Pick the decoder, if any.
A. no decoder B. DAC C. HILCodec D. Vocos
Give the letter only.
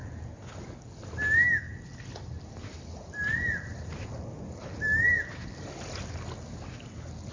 A